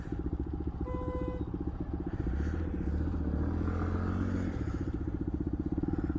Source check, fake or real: real